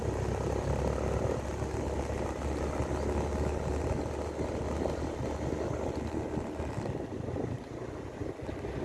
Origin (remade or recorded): recorded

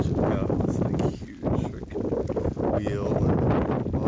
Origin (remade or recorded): recorded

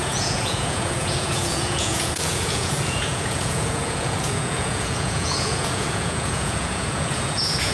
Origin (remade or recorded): remade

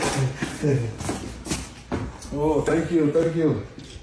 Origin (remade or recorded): recorded